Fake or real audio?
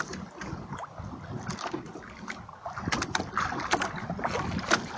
real